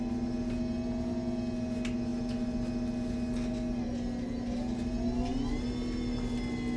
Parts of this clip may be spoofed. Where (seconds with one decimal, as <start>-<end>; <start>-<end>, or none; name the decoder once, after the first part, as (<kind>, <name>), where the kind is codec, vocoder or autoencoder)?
none